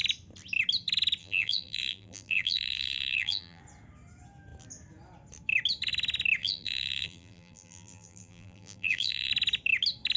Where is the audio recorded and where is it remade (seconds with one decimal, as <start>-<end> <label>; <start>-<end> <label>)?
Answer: 0.0-1.2 recorded; 1.2-3.6 remade; 3.6-6.4 recorded; 6.4-9.3 remade; 9.3-10.2 recorded